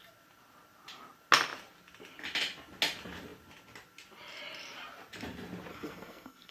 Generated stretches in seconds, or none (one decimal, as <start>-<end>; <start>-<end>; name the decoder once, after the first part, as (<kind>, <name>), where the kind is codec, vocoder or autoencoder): 5.7-6.5 (codec, SNAC)